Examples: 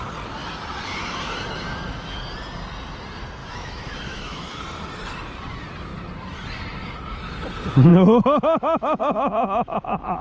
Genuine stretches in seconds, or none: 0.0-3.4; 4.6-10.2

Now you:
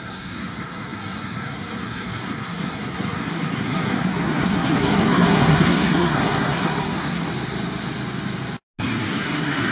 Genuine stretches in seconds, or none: 7.3-8.8

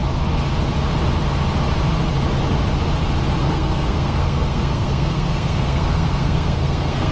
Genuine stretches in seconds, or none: 0.0-3.4

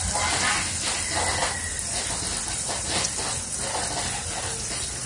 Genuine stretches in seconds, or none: 0.0-5.1

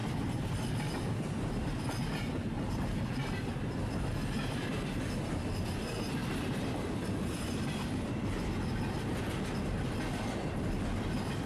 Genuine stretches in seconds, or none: 0.0-6.2; 7.8-11.5

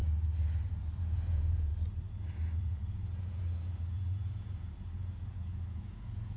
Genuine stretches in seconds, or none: 0.0-1.0; 1.7-2.6